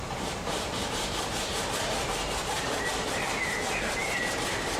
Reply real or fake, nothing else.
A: fake